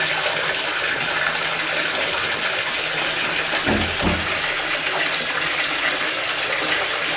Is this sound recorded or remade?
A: recorded